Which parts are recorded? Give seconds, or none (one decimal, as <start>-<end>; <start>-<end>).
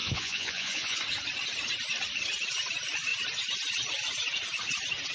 1.0-5.1